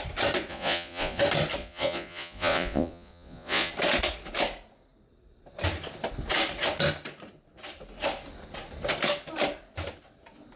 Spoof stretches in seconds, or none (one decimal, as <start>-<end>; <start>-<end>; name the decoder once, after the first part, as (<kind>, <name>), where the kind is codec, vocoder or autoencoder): 0.5-1.2 (vocoder, Vocos); 1.6-3.7